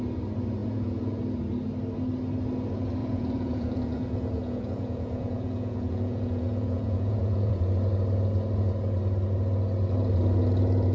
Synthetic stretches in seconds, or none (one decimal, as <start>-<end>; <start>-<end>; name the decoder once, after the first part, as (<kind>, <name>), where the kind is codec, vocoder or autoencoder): 0.6-1.2 (vocoder, Vocos); 3.0-7.6